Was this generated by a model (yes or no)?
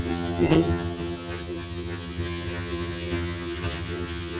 yes